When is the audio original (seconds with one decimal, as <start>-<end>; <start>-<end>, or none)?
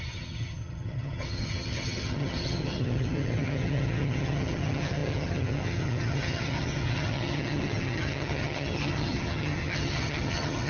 none